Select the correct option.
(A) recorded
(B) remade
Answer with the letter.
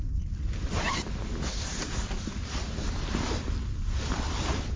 A